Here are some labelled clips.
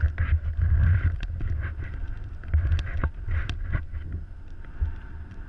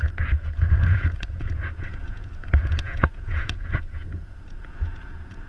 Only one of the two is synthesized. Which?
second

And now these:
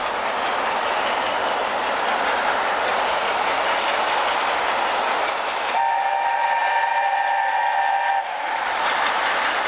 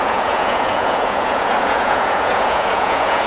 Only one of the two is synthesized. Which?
second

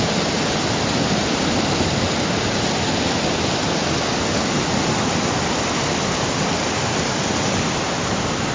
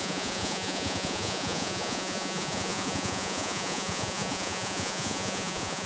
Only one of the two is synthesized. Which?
second